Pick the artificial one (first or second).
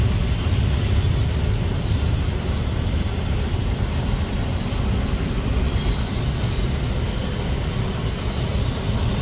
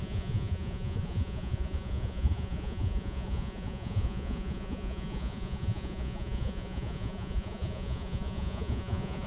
second